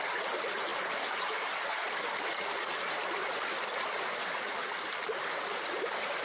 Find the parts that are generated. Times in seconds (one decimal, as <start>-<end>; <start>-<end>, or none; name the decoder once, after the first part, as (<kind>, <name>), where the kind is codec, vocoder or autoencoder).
none